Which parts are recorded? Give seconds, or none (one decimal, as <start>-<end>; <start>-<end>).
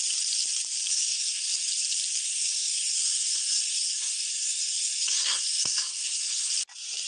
0.0-0.9; 1.7-2.2; 6.5-7.1